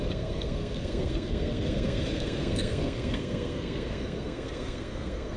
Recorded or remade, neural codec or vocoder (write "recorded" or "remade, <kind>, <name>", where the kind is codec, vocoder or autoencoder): remade, codec, SNAC